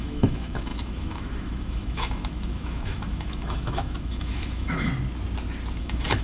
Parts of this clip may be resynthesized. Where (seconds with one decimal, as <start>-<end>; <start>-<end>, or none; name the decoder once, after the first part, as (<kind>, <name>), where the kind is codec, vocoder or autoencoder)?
0.0-4.9 (autoencoder, DAC-VAE); 5.8-6.2